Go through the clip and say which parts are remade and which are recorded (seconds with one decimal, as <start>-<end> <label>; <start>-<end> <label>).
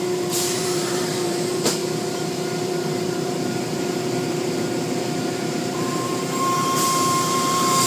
0.0-7.9 remade